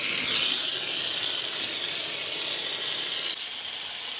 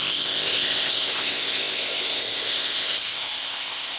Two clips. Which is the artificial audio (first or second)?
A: second